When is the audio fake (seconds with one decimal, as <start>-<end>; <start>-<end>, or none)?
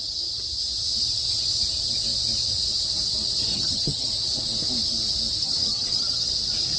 3.5-4.1; 5.4-6.3